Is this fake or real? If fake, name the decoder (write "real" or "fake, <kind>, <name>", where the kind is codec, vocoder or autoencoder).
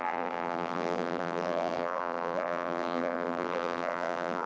fake, vocoder, BigVGAN v2